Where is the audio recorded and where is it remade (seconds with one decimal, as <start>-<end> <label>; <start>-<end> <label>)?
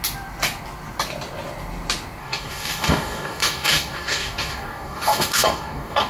0.0-2.2 recorded; 2.2-6.1 remade